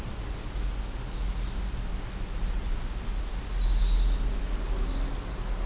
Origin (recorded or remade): recorded